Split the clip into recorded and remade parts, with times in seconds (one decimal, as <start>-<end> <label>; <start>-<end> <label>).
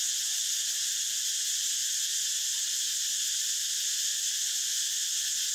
0.0-0.4 recorded; 0.4-1.2 remade; 1.2-5.5 recorded